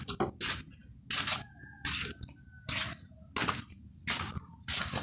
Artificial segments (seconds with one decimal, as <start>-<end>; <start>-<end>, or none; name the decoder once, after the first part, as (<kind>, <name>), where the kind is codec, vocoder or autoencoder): none